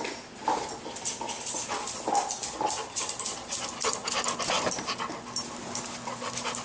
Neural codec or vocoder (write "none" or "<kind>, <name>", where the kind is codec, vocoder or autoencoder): none